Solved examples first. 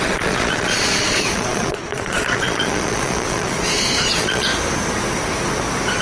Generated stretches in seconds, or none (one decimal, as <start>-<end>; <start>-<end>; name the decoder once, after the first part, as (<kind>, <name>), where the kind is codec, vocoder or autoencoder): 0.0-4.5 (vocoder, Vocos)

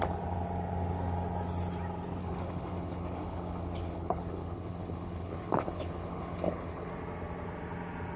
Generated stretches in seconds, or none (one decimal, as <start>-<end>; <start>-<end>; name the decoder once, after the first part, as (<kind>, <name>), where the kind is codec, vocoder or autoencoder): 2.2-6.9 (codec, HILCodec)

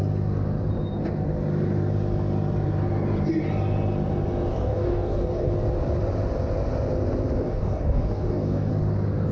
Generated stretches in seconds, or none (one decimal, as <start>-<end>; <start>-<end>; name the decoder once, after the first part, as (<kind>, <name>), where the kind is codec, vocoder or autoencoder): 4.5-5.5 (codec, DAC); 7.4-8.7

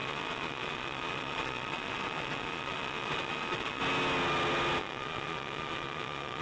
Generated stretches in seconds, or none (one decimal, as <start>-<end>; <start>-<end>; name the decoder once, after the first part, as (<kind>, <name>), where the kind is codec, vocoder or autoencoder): 0.0-3.8 (vocoder, Vocos); 4.8-6.4